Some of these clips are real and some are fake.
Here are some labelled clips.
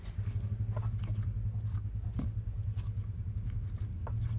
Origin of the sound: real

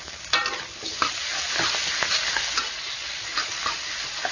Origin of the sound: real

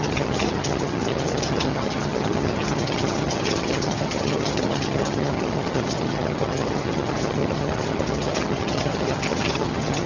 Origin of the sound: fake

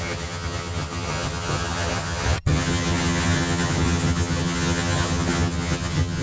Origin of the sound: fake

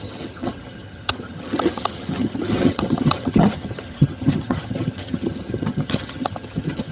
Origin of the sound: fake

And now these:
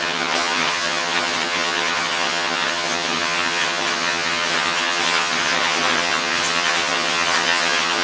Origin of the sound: fake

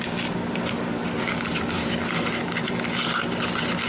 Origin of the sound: real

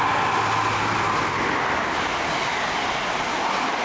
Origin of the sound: real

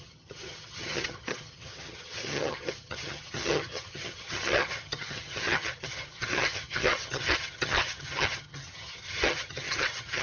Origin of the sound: fake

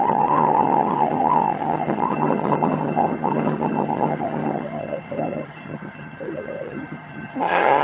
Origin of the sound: fake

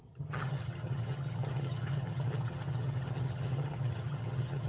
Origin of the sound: fake